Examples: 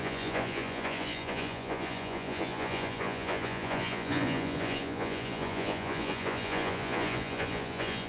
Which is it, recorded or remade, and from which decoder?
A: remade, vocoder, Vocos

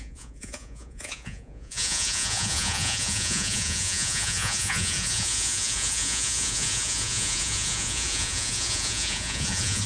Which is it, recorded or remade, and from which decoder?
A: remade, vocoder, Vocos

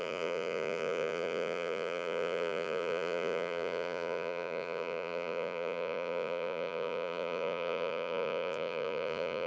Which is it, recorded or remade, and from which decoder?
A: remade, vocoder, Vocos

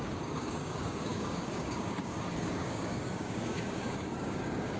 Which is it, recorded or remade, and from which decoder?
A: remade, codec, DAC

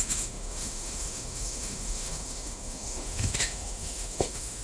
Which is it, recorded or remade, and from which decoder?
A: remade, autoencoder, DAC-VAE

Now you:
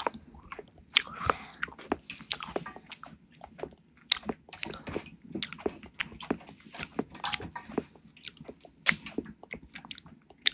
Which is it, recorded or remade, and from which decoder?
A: recorded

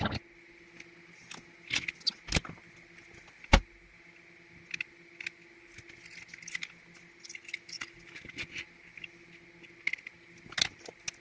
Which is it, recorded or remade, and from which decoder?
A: recorded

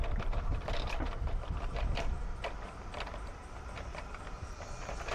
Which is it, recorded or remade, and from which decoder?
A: recorded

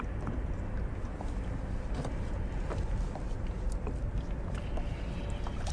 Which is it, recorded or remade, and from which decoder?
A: recorded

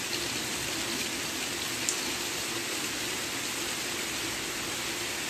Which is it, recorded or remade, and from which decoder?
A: recorded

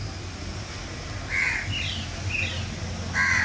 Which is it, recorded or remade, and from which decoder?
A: recorded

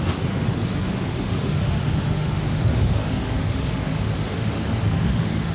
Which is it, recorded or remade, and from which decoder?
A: remade, autoencoder, DAC-VAE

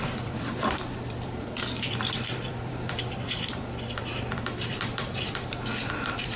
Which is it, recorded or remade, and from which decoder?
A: remade, vocoder, BigVGAN v2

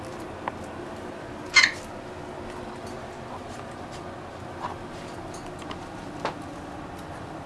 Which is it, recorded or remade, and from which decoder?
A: recorded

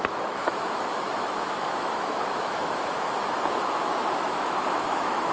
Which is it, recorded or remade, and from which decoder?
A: remade, autoencoder, DAC-VAE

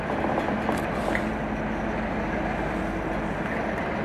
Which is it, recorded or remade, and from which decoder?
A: recorded